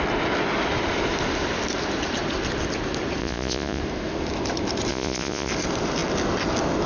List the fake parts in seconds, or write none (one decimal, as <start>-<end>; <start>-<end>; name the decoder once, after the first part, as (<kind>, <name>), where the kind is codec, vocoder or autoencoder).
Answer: 3.2-3.8 (vocoder, Vocos); 4.9-5.5